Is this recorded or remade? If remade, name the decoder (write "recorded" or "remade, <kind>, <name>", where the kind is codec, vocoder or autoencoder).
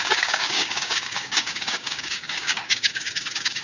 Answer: remade, codec, DAC